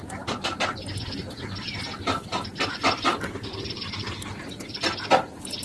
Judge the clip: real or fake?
fake